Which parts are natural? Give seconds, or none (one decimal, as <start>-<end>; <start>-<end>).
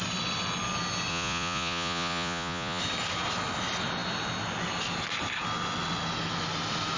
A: 0.0-1.1; 2.8-7.0